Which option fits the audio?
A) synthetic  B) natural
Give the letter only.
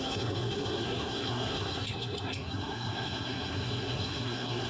A